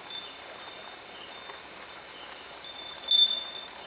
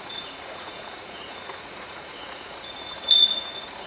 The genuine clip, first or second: first